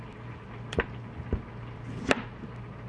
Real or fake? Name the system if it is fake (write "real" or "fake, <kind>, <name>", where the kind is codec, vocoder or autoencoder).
real